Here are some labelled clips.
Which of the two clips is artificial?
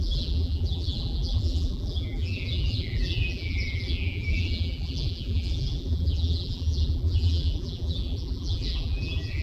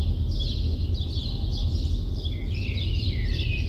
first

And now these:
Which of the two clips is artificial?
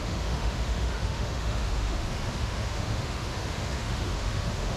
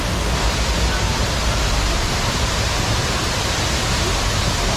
first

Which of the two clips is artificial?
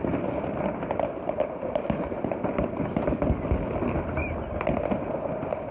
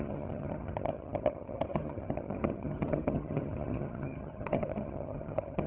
second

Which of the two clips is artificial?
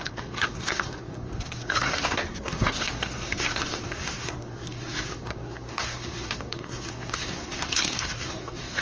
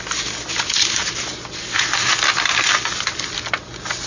first